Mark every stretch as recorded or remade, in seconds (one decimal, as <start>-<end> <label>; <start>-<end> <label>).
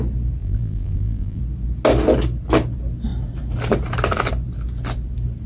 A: 0.0-0.4 recorded; 0.4-1.4 remade; 1.4-5.5 recorded